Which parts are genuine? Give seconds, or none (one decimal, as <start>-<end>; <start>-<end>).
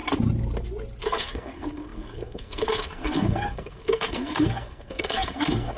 0.0-1.0